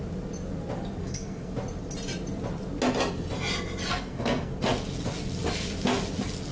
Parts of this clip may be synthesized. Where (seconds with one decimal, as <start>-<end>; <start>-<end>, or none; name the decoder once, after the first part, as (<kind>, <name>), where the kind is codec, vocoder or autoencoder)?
1.0-1.5 (codec, SNAC); 3.9-4.5